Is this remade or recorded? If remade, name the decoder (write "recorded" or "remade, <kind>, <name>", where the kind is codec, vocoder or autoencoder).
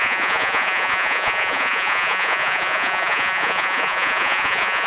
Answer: remade, vocoder, Vocos